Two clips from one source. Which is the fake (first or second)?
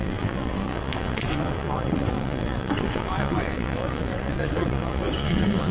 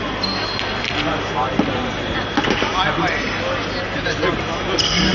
first